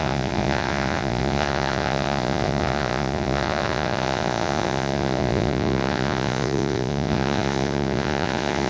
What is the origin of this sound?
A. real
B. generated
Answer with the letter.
B